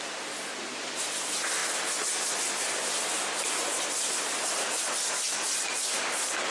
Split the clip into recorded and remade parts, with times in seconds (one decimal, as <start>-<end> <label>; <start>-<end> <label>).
0.0-6.5 recorded